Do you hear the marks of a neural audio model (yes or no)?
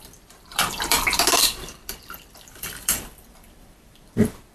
yes